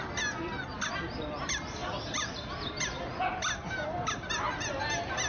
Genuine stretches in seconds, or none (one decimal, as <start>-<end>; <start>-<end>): 0.0-5.3